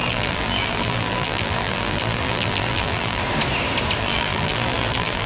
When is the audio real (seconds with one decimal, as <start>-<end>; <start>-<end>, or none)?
3.2-4.0